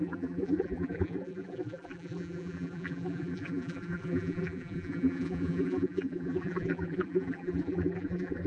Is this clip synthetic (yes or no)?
yes